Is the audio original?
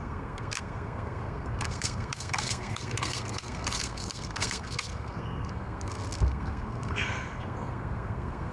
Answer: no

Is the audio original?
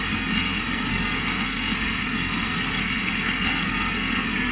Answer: no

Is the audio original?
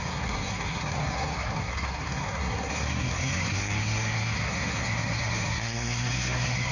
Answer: no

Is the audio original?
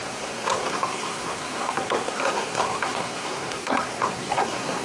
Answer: no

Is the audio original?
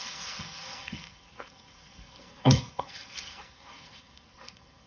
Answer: no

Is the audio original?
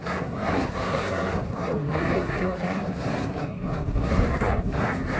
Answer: no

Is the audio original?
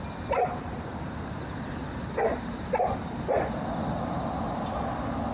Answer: yes